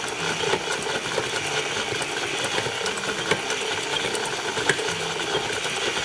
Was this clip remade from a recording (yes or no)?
no